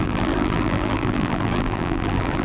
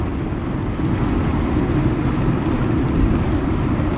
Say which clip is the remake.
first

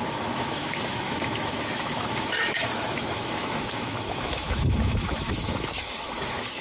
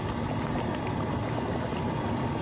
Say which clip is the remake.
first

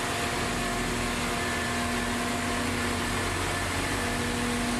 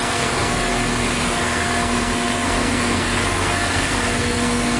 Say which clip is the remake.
second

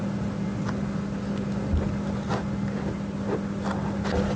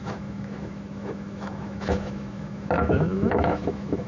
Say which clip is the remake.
second